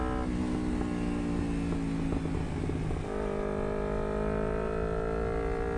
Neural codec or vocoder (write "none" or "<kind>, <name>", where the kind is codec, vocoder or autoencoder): none